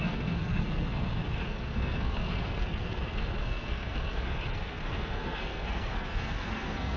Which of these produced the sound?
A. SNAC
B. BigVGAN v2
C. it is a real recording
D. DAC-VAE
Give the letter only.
A